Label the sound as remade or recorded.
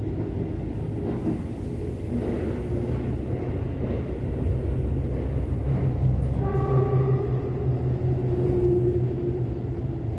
recorded